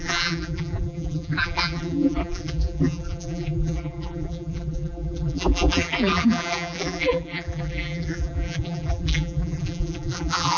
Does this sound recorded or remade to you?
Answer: remade